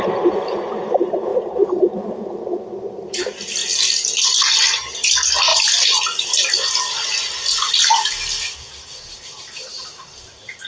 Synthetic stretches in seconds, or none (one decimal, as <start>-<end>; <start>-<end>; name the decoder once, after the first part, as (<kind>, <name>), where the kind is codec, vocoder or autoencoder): none